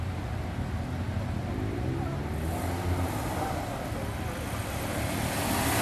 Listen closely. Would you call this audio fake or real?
real